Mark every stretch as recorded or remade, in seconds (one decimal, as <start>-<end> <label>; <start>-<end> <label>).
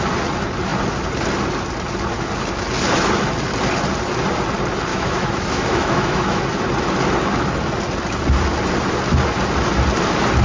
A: 0.0-4.9 recorded; 4.9-6.4 remade; 6.4-10.4 recorded